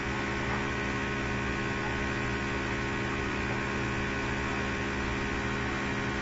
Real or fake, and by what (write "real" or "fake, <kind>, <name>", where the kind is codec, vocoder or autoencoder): real